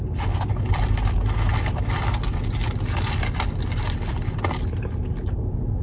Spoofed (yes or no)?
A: no